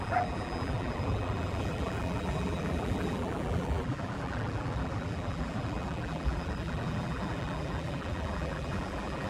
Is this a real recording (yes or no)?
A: no